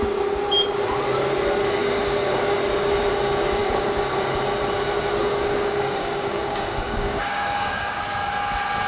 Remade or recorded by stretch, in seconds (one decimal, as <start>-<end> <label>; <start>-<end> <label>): 0.0-1.8 recorded; 1.8-2.6 remade; 2.6-3.6 recorded; 3.6-4.2 remade; 4.2-5.2 recorded; 5.2-8.0 remade; 8.0-8.9 recorded